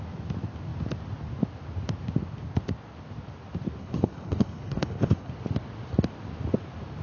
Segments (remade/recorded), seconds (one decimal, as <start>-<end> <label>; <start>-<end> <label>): 0.0-3.8 recorded; 3.8-5.3 remade; 5.3-7.0 recorded